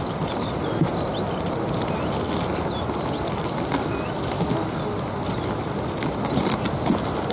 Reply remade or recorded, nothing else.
recorded